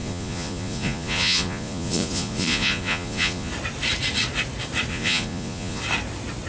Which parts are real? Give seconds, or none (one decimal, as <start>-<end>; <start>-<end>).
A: 3.5-4.9; 5.8-6.5